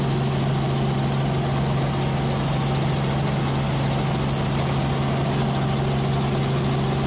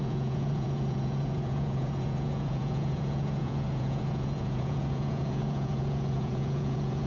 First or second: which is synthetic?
second